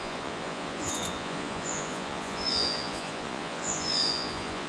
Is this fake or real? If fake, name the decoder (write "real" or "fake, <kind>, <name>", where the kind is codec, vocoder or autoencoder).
fake, vocoder, Vocos